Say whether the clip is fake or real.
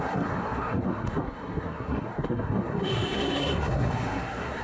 fake